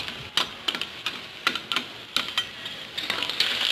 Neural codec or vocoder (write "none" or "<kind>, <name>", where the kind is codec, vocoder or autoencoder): none